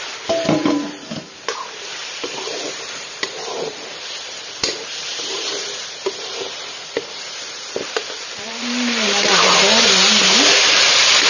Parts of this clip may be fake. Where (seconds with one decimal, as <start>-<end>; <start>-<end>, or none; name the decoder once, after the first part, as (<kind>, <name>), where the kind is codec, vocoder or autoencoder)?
0.0-11.3 (vocoder, BigVGAN v2)